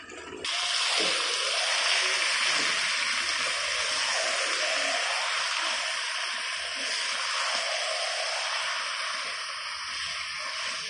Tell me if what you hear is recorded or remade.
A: recorded